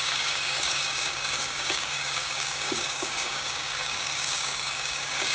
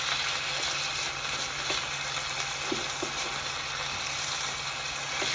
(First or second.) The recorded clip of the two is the second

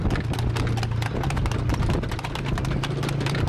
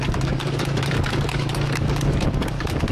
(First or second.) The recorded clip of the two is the first